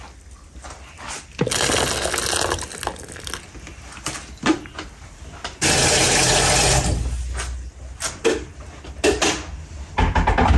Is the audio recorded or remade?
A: recorded